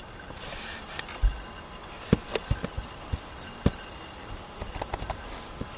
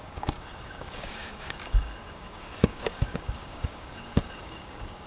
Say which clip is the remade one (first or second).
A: second